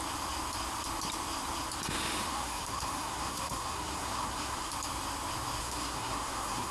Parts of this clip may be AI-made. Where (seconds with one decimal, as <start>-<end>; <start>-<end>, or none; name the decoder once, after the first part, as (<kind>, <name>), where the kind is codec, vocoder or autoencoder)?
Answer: 2.3-4.7 (codec, SNAC); 5.6-6.7

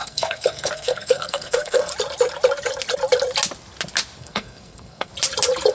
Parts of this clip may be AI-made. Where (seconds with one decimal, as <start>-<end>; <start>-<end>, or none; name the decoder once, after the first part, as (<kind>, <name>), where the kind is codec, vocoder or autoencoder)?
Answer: 0.0-1.9 (codec, SNAC); 4.2-5.1

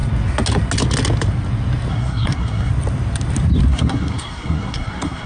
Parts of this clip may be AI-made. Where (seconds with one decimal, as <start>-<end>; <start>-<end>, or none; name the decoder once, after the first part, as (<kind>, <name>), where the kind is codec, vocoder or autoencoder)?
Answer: 1.9-2.7 (codec, SNAC); 3.7-5.3

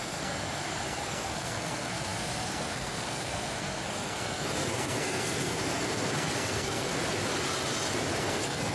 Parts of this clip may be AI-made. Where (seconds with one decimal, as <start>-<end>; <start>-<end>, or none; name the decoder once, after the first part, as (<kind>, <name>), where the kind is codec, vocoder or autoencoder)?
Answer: 0.0-6.9 (codec, SNAC); 8.2-8.7

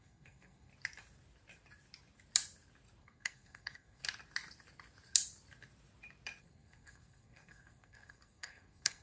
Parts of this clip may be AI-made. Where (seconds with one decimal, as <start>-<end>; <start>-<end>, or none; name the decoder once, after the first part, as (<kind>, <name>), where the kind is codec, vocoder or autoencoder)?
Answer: 0.0-0.7 (codec, SNAC); 3.0-4.0; 6.4-9.0

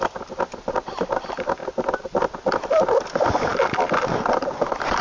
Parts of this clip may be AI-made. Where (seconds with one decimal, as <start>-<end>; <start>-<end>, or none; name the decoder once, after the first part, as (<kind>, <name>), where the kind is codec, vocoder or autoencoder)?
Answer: none